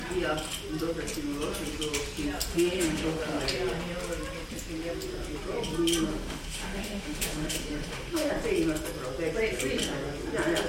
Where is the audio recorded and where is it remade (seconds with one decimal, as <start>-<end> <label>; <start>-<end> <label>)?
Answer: 0.0-2.5 recorded; 2.5-3.4 remade; 3.4-6.1 recorded; 6.1-8.3 remade; 8.3-10.7 recorded